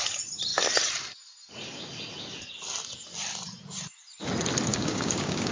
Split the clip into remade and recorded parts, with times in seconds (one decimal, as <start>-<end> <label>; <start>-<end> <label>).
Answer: 0.0-4.7 recorded; 4.7-5.5 remade